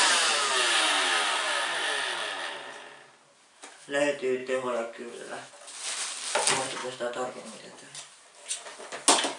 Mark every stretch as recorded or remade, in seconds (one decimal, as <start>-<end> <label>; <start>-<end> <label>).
0.0-4.4 recorded; 4.4-5.5 remade; 5.5-6.8 recorded; 6.8-7.6 remade; 7.6-9.4 recorded